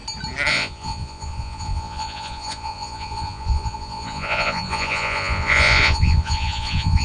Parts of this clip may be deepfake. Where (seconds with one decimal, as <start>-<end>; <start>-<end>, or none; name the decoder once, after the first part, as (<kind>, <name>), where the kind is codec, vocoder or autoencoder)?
0.5-7.0 (vocoder, Vocos)